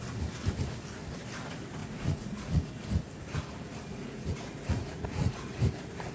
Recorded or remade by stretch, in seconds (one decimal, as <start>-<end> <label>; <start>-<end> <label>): 0.0-1.8 recorded; 1.8-2.7 remade; 2.7-3.9 recorded; 3.9-5.6 remade; 5.6-6.1 recorded